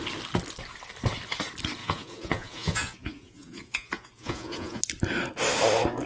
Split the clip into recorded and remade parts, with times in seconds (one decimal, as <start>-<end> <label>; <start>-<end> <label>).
0.0-1.8 recorded; 1.8-4.8 remade; 4.8-6.1 recorded